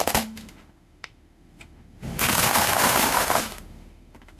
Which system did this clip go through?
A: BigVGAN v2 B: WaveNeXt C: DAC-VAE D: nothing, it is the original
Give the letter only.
C